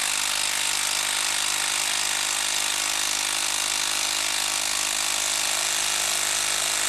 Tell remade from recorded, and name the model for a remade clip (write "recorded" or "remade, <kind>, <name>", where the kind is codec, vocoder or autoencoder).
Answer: recorded